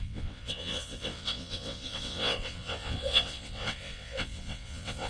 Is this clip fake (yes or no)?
yes